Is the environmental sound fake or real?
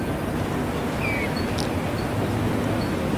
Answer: real